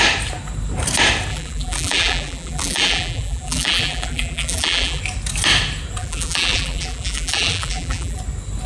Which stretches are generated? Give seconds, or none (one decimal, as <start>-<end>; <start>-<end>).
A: 1.3-5.0; 6.0-8.2